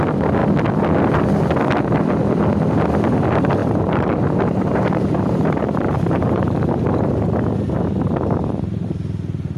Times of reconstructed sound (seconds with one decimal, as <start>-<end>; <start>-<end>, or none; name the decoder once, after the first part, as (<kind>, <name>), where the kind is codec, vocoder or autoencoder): 3.6-7.0 (vocoder, BigVGAN v2)